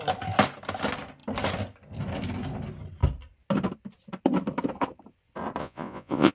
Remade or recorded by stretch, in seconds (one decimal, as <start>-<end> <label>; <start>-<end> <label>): 0.0-5.6 recorded; 5.6-6.3 remade